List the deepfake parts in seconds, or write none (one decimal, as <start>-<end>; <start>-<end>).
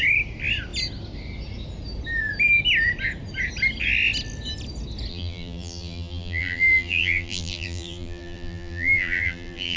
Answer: 5.1-9.8